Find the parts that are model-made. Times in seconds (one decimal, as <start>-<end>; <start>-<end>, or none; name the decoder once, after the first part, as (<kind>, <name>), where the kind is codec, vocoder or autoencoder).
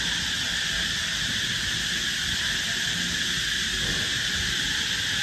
none